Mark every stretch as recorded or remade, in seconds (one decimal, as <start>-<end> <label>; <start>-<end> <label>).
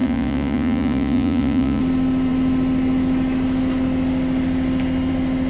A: 0.0-1.8 remade; 1.8-5.5 recorded